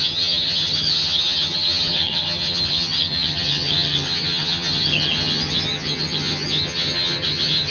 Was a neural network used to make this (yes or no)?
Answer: yes